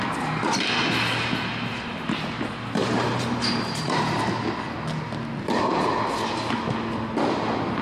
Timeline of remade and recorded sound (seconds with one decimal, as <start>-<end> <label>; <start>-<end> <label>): 0.0-2.8 recorded; 2.8-4.3 remade; 4.3-7.8 recorded